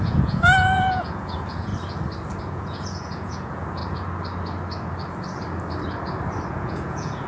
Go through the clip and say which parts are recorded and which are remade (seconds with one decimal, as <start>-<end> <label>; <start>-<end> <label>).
0.0-1.7 remade; 1.7-2.4 recorded; 2.4-3.8 remade; 3.8-6.5 recorded; 6.5-7.3 remade